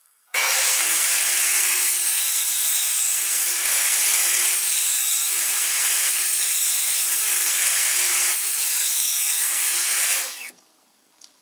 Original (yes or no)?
no